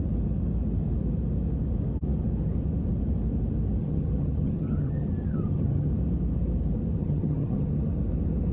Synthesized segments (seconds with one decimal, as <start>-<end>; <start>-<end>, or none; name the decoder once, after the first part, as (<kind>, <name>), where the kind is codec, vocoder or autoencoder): 3.8-5.9 (vocoder, HiFi-GAN); 7.0-7.7